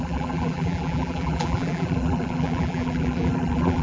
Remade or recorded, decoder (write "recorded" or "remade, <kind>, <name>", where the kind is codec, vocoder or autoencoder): remade, vocoder, BigVGAN v2